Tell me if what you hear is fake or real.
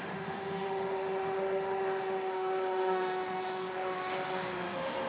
fake